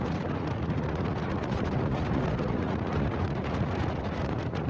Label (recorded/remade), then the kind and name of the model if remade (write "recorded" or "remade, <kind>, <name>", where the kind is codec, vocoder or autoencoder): remade, vocoder, Vocos